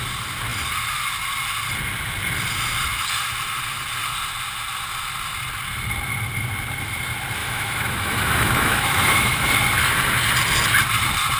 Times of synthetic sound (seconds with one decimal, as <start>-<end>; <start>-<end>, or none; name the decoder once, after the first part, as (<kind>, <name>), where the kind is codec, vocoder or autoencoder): 7.4-9.5 (autoencoder, DAC-VAE)